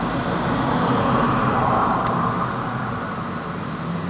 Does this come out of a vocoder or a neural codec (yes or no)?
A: no